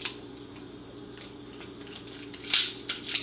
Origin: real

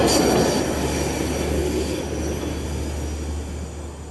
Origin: real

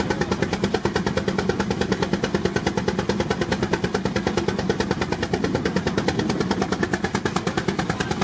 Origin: real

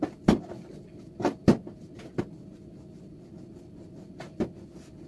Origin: real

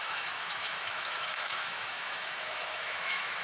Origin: fake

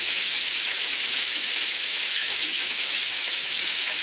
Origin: fake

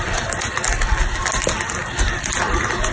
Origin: real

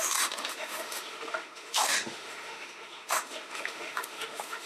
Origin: fake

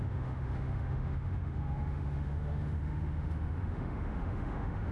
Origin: fake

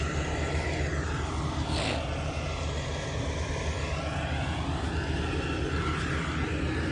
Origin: real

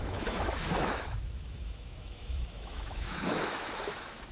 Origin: fake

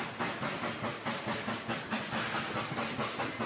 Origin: real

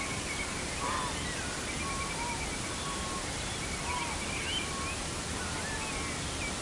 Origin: real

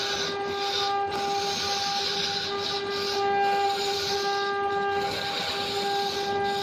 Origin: real